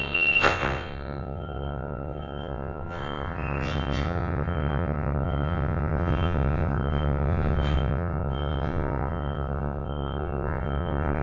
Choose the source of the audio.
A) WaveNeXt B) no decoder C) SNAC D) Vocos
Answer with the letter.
A